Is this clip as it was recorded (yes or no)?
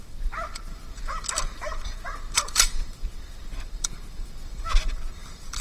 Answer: no